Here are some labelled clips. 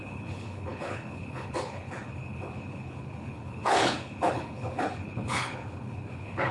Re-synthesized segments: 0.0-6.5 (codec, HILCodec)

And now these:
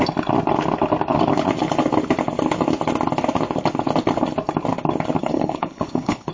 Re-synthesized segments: 5.2-6.3 (codec, HILCodec)